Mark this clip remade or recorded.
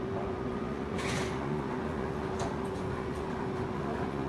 remade